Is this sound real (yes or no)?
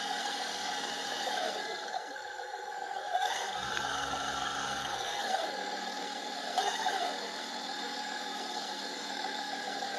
no